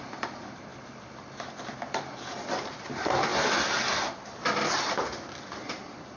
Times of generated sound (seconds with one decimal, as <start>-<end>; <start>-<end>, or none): 0.0-3.3; 4.3-6.2